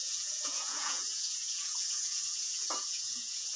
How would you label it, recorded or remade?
remade